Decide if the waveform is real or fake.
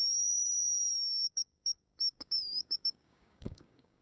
fake